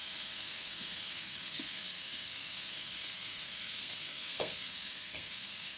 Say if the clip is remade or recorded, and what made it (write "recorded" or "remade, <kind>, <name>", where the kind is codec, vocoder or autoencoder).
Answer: remade, codec, SNAC